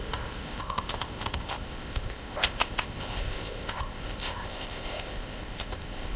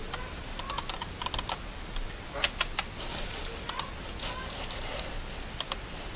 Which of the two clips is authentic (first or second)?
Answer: second